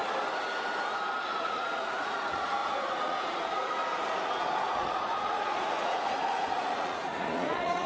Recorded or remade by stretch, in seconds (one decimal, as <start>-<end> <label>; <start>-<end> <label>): 0.0-1.2 recorded; 1.2-3.8 remade; 3.8-4.6 recorded; 4.6-7.9 remade